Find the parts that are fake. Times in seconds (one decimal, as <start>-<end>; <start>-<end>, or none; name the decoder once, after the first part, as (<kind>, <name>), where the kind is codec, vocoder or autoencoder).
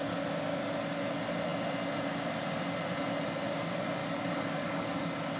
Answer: 4.0-5.0 (codec, DAC)